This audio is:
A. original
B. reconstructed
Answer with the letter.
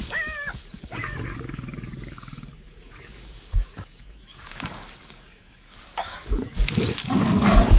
B